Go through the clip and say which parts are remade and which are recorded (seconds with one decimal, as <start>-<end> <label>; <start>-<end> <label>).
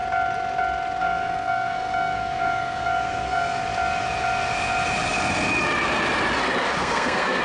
0.0-1.0 recorded; 1.0-3.6 remade; 3.6-6.8 recorded; 6.8-7.4 remade